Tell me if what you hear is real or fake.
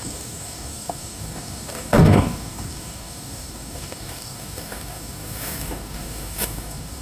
fake